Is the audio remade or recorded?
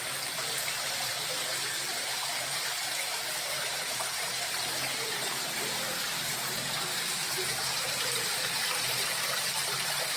remade